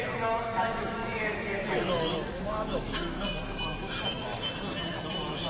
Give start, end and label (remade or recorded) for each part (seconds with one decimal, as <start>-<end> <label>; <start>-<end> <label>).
0.0-4.3 remade; 4.3-5.1 recorded; 5.1-5.5 remade